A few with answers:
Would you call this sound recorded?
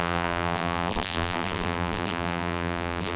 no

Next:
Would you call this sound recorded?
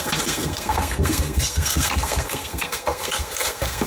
no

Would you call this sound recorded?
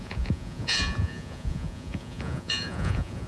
no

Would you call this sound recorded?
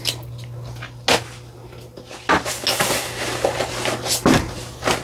yes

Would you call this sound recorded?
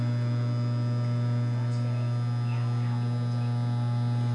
yes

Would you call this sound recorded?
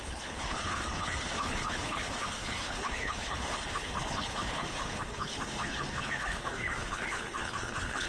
no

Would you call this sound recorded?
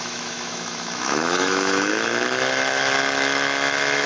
no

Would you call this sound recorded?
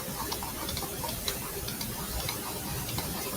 no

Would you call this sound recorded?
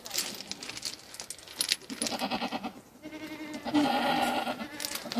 yes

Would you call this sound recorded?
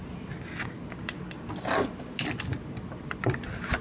yes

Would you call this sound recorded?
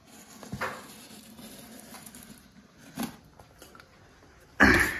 yes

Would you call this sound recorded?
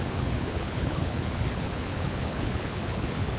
no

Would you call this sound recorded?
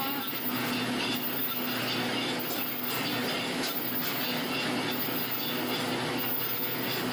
yes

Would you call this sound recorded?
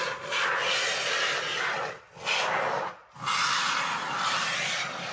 yes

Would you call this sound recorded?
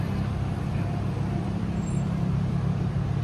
no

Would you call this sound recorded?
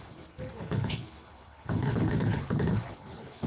no